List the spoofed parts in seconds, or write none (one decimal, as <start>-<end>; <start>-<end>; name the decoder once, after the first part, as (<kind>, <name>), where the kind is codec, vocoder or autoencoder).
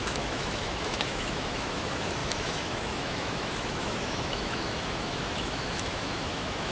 0.0-6.7 (autoencoder, DAC-VAE)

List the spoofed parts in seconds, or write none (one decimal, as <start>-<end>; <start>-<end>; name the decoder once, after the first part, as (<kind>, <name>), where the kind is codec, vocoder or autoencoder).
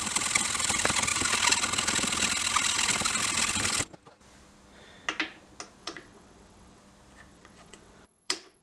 5.8-6.8 (vocoder, WaveNeXt); 7.3-8.6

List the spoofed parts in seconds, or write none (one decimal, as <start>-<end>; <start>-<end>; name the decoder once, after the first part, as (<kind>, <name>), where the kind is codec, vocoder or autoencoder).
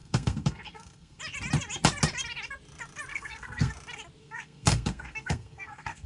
0.0-1.2 (codec, SNAC); 3.1-3.7; 4.2-6.1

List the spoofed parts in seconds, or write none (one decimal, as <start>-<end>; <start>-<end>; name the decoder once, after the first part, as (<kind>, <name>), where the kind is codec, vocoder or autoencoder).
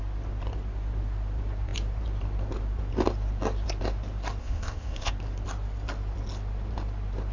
4.4-5.1 (codec, ZipCodec)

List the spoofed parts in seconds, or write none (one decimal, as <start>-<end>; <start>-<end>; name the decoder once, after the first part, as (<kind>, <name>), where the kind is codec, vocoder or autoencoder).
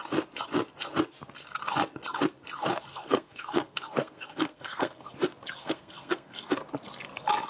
2.9-5.1 (codec, SNAC); 5.6-6.5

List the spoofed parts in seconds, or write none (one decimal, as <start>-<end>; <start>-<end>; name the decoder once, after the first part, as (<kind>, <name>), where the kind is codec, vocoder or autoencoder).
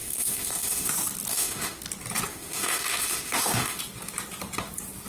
0.0-0.9 (autoencoder, DAC-VAE); 1.3-1.8; 2.3-3.8